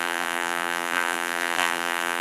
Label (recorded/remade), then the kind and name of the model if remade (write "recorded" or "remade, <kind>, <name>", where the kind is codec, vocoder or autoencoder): remade, vocoder, BigVGAN v2